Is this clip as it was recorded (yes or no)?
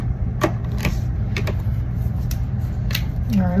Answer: no